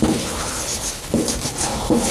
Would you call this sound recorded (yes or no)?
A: no